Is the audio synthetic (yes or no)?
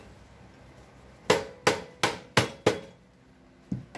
no